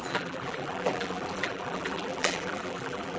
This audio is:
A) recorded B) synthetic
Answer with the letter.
B